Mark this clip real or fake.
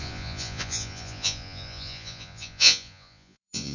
fake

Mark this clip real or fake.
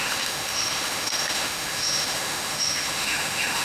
fake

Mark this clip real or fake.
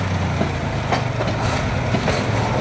real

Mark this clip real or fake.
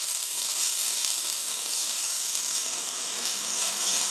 fake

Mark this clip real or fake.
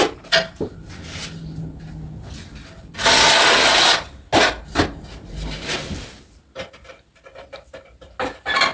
real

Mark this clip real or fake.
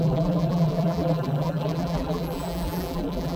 fake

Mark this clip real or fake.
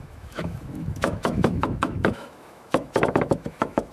fake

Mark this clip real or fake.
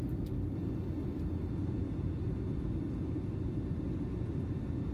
real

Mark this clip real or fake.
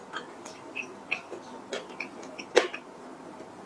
real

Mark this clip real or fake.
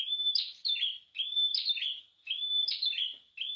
fake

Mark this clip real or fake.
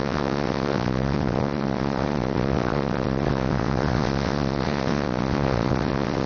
fake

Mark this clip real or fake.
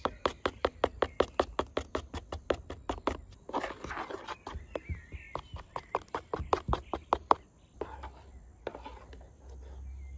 real